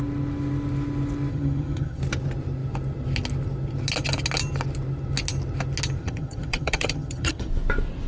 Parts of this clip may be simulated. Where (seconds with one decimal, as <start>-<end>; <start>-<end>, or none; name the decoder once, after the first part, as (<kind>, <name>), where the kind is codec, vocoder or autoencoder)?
1.3-2.0 (vocoder, HiFi-GAN); 6.0-7.5